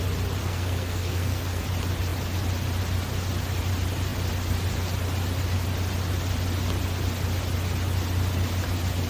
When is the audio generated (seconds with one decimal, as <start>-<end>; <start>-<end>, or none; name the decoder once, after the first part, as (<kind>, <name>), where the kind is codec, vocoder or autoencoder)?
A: 0.4-1.6 (codec, SNAC)